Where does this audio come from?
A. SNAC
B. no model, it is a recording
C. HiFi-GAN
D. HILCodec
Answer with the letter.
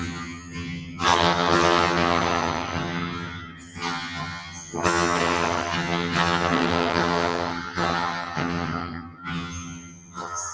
C